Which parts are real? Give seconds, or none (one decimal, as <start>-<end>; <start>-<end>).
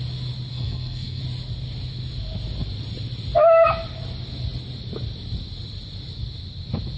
0.0-0.5; 1.2-7.0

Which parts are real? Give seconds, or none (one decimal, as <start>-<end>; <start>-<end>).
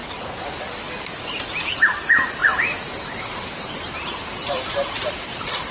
0.0-2.4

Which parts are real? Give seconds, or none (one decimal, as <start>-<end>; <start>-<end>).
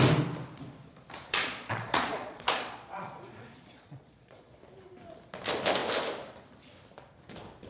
0.0-1.4; 4.6-7.7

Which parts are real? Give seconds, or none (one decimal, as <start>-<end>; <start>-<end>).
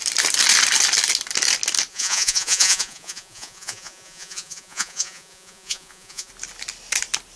0.0-1.9; 6.3-7.4